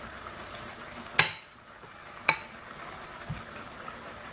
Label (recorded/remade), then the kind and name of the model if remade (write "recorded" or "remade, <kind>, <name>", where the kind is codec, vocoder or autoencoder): recorded